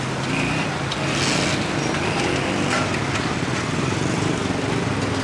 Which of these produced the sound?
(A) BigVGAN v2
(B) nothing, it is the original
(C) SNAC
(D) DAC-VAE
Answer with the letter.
B